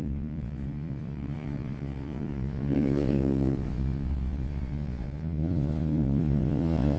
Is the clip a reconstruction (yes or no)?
yes